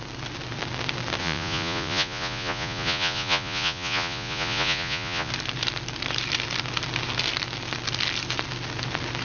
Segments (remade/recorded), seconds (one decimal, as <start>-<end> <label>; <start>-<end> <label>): 0.0-1.2 recorded; 1.2-5.3 remade; 5.3-9.2 recorded